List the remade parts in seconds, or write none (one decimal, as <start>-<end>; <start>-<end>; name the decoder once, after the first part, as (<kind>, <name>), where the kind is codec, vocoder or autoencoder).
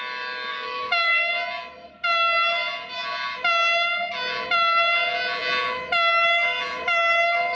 0.5-1.3 (autoencoder, DAC-VAE)